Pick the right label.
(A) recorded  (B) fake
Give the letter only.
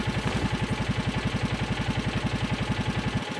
A